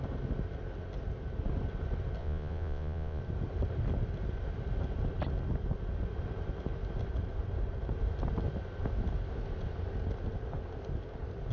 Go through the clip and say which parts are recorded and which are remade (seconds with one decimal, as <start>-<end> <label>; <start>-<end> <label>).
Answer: 0.0-2.2 recorded; 2.2-3.2 remade; 3.2-11.5 recorded